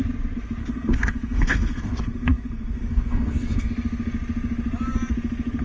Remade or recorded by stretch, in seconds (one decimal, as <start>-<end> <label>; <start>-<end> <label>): 0.0-0.6 recorded; 0.6-3.7 remade; 3.7-5.6 recorded